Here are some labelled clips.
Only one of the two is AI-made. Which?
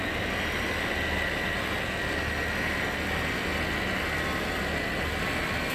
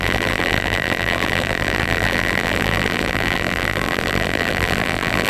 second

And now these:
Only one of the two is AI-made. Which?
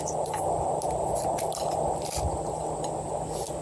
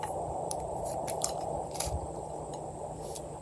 second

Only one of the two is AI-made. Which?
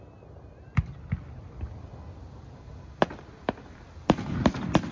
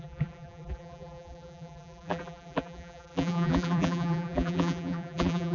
second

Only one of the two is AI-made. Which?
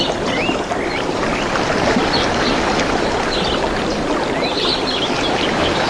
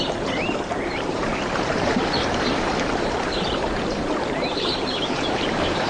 second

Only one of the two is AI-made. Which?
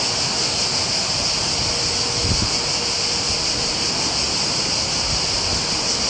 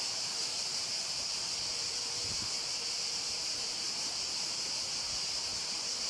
second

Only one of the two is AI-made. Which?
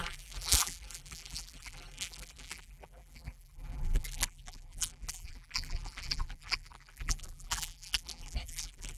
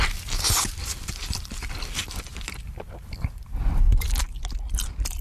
first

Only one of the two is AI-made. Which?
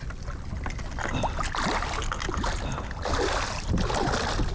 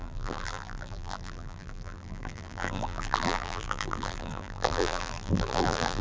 second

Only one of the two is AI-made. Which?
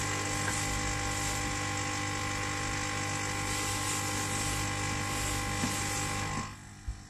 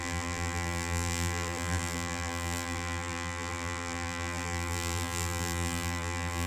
second